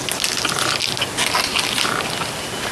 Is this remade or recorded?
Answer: recorded